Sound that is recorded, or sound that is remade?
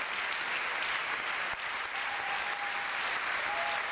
recorded